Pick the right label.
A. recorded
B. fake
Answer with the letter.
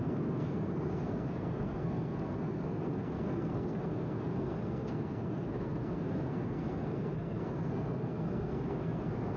B